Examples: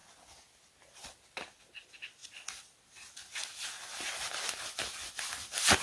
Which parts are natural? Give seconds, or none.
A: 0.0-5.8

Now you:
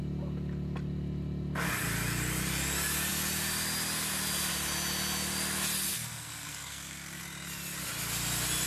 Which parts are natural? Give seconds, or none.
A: 0.0-5.9; 7.2-8.7